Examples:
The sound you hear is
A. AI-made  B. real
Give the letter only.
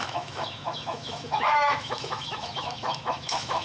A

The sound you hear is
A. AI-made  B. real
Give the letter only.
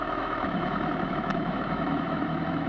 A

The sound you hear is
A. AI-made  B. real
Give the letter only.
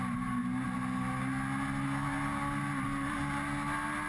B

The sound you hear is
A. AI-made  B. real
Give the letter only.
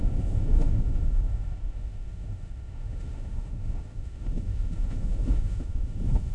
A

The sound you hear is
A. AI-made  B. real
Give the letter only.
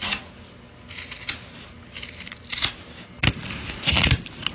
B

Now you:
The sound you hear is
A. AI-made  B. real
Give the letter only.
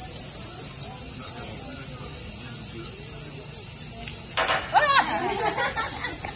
B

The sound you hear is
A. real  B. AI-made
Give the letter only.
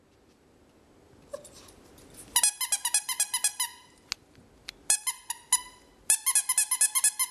A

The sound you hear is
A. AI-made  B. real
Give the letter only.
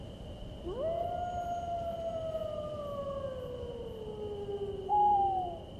B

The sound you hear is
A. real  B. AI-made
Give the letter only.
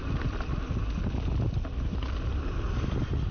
A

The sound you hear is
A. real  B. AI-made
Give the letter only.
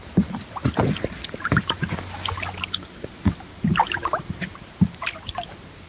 A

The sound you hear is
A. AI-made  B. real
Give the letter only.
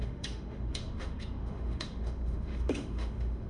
A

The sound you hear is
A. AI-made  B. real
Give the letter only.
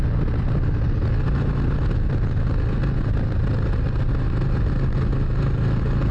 B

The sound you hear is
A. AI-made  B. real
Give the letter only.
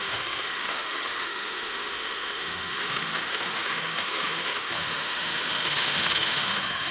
A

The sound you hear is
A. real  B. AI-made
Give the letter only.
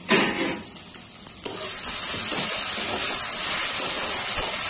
A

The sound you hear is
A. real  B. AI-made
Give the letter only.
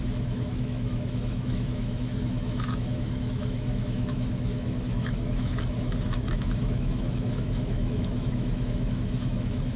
B